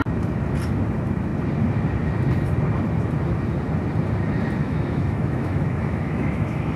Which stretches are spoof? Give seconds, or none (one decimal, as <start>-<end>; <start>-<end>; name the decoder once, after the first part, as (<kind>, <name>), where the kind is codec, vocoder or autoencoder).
4.6-6.8 (autoencoder, DAC-VAE)